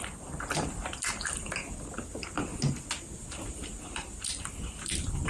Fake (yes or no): no